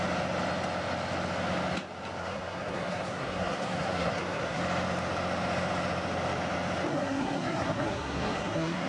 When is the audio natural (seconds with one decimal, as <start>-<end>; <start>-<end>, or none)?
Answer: 0.0-2.2; 4.6-6.9